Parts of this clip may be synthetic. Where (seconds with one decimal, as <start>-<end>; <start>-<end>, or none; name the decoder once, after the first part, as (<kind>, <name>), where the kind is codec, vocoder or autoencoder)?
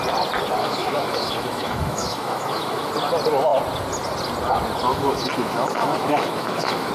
0.6-2.9 (autoencoder, DAC-VAE); 4.9-6.9